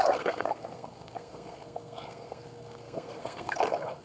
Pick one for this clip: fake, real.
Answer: fake